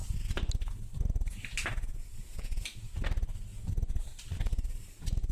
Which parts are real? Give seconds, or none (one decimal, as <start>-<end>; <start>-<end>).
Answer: 0.0-1.9; 2.6-3.5; 4.0-5.3